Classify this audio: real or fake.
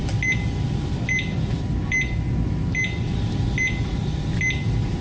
real